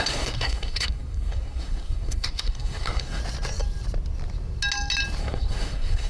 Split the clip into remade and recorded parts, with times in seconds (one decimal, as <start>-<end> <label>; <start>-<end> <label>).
0.0-3.2 remade; 3.2-5.2 recorded; 5.2-6.1 remade